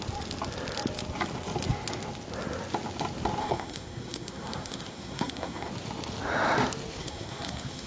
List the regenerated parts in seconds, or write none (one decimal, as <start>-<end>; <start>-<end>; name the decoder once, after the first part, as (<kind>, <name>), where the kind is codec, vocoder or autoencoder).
3.4-5.7 (codec, SNAC); 7.0-7.9